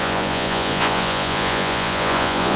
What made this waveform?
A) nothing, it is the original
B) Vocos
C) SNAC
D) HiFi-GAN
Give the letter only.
B